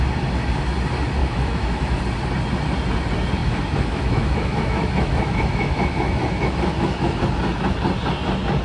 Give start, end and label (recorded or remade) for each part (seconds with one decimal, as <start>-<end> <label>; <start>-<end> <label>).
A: 0.0-1.2 recorded; 1.2-2.0 remade; 2.0-3.4 recorded; 3.4-7.2 remade; 7.2-8.6 recorded